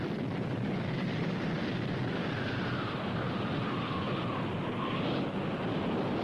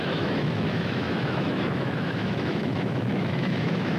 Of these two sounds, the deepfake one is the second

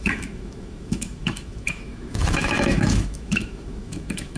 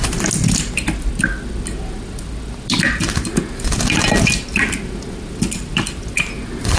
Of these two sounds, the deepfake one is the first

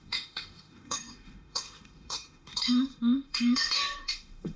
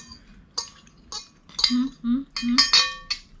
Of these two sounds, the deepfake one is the first